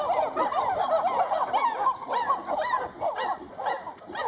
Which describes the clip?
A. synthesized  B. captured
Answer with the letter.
B